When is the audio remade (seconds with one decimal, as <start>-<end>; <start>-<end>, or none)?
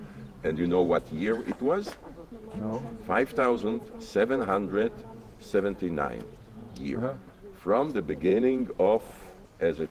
0.0-9.9